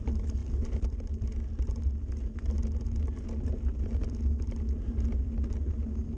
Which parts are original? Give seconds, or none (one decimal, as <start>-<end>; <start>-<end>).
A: 0.0-6.2